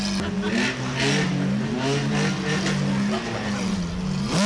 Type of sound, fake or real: real